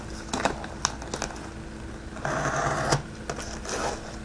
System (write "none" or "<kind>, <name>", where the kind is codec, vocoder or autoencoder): none